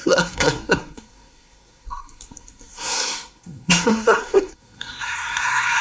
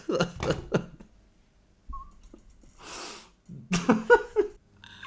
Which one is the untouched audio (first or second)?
second